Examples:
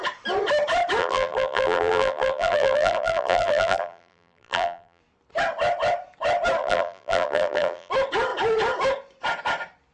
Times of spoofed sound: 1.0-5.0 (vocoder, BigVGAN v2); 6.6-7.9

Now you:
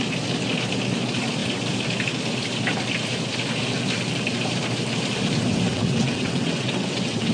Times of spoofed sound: 5.7-7.3 (vocoder, WaveNeXt)

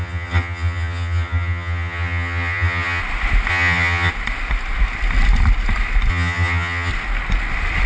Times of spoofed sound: 0.0-3.0 (vocoder, HiFi-GAN); 3.5-4.1; 6.1-6.9

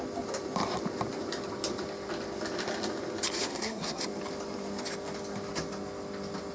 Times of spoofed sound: 3.4-4.0 (codec, SNAC)